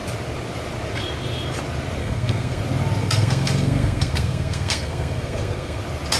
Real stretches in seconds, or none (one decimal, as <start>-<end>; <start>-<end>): 0.0-2.0; 2.6-3.0; 5.8-6.2